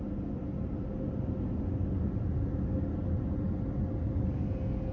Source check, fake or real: real